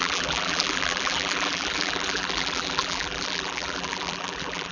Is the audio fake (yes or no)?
yes